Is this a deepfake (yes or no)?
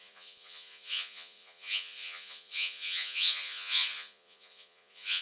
yes